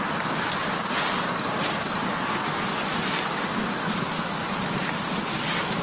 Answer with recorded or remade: recorded